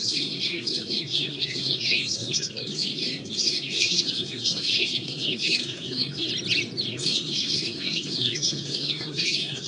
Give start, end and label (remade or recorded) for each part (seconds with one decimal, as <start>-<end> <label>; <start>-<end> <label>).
0.0-6.3 remade; 6.3-6.9 recorded; 6.9-9.7 remade